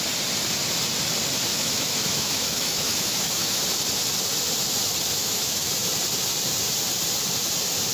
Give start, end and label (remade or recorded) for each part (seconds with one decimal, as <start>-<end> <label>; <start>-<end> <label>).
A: 0.0-1.5 recorded; 1.5-3.6 remade; 3.6-5.2 recorded; 5.2-5.7 remade; 5.7-7.9 recorded